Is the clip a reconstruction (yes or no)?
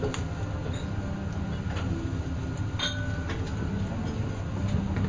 no